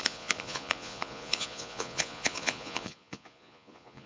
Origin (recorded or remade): remade